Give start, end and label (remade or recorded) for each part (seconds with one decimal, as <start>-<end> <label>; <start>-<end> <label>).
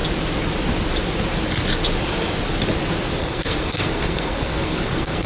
0.0-3.2 recorded; 3.2-5.3 remade